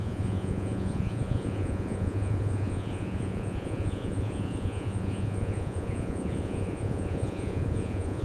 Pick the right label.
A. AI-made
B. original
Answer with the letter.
A